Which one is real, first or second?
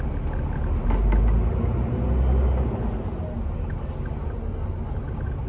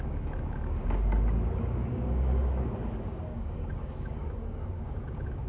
first